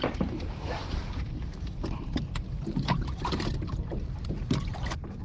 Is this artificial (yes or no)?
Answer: yes